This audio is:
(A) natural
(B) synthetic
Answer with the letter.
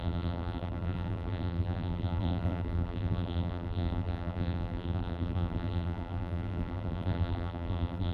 B